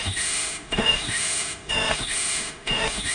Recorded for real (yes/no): no